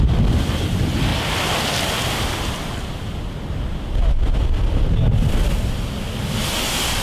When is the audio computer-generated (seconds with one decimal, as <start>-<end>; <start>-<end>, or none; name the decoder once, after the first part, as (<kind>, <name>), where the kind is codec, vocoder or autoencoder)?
none